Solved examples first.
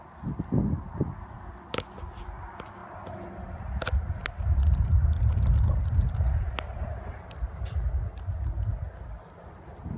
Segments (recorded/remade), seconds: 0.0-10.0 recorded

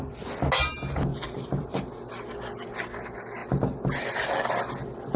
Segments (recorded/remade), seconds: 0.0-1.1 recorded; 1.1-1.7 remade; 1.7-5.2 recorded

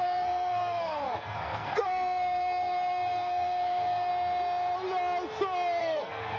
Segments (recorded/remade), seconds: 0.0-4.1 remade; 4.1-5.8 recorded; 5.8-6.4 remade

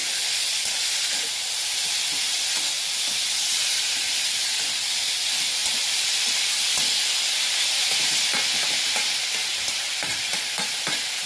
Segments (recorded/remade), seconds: 0.0-5.6 recorded; 5.6-6.4 remade; 6.4-9.5 recorded; 9.5-11.3 remade

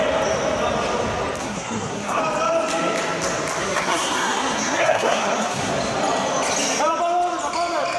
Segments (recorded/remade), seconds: 0.0-1.4 recorded; 1.4-2.2 remade; 2.2-3.6 recorded; 3.6-5.7 remade; 5.7-8.0 recorded